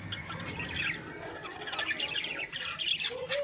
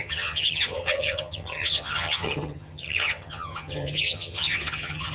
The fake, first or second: second